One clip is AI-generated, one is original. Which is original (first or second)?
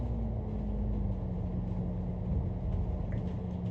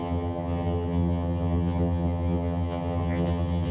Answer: first